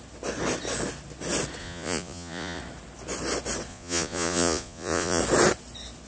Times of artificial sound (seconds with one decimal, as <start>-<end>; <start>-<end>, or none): 1.6-2.6; 3.7-5.2